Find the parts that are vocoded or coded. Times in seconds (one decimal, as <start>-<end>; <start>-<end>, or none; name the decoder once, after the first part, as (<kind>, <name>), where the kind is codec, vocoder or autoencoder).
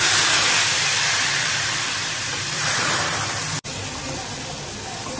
0.0-3.8 (vocoder, BigVGAN v2); 4.8-5.2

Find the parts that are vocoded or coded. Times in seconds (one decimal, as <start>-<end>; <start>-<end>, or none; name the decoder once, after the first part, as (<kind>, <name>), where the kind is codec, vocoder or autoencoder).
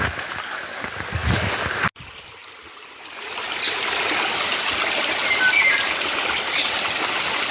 none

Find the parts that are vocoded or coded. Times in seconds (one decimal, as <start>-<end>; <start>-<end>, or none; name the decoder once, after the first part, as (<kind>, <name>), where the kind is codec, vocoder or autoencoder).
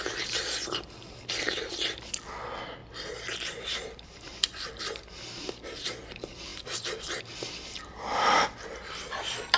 0.0-9.6 (vocoder, BigVGAN v2)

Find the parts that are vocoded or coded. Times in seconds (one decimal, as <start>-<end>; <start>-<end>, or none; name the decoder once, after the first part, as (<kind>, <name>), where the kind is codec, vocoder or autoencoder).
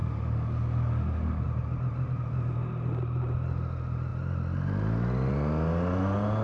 0.0-1.4 (codec, DAC)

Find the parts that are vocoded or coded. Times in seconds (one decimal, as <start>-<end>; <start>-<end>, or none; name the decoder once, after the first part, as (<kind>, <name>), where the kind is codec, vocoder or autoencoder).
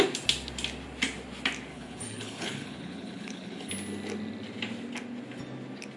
1.7-3.7 (codec, HILCodec)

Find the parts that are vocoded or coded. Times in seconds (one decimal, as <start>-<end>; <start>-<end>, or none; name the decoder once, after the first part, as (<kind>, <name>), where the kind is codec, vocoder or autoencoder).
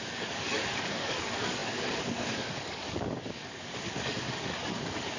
0.0-5.2 (codec, DAC)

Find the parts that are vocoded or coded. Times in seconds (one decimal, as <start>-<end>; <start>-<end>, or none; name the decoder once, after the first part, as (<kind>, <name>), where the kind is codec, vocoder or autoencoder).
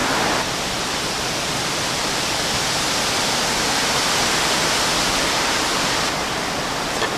4.2-5.7 (vocoder, BigVGAN v2)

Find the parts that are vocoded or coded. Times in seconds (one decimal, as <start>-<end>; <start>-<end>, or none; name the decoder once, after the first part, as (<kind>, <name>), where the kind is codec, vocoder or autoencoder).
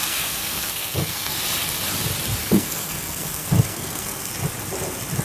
0.0-1.4 (codec, SNAC); 2.4-4.3